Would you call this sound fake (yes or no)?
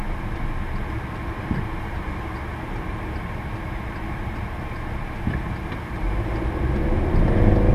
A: no